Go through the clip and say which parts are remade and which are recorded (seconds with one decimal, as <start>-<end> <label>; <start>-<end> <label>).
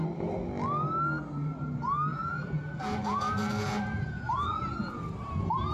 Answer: 0.0-2.1 recorded; 2.1-5.0 remade; 5.0-5.7 recorded